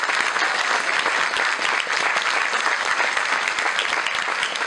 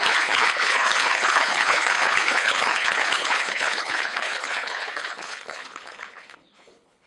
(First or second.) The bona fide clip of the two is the first